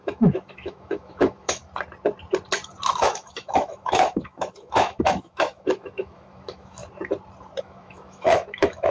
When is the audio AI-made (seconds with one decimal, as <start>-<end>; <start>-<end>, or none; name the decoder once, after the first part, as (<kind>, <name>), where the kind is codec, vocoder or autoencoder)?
0.0-1.6 (autoencoder, DAC-VAE); 3.0-6.8; 7.6-8.9